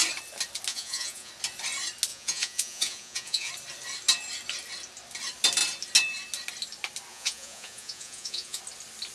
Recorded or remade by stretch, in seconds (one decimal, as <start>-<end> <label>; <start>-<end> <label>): 0.0-0.7 recorded; 0.7-1.3 remade; 1.3-2.1 recorded; 2.1-3.5 remade; 3.5-7.1 recorded; 7.1-8.6 remade; 8.6-9.1 recorded